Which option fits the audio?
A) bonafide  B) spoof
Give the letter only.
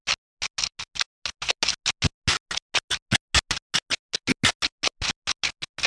A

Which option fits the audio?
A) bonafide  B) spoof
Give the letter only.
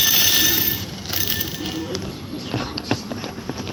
B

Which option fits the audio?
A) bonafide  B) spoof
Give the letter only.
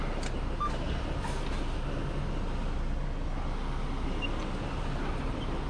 A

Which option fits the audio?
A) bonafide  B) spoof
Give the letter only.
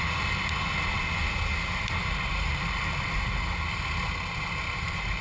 A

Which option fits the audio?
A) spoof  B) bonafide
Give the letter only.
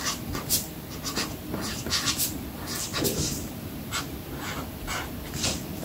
B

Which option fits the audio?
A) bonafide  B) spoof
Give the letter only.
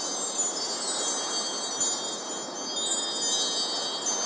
A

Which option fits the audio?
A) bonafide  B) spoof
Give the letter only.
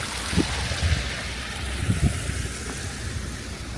A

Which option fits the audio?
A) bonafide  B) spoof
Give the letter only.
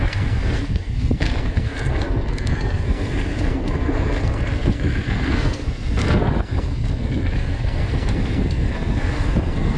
B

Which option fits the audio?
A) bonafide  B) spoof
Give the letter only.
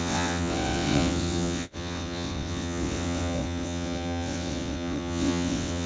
B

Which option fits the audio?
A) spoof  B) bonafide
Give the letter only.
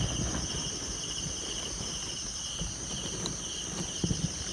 B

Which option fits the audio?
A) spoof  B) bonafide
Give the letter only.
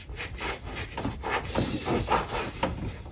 B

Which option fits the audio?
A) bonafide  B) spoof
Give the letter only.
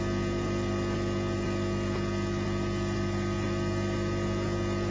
A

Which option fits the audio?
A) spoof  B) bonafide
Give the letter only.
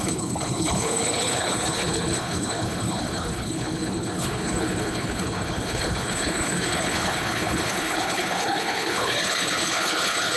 A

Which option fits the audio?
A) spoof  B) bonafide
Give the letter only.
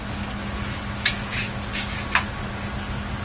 B